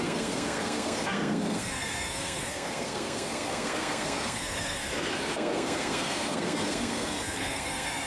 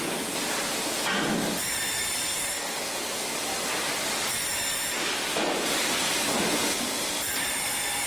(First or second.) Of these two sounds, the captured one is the second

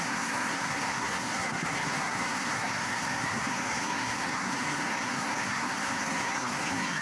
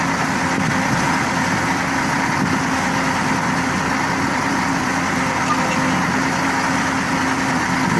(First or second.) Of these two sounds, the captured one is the second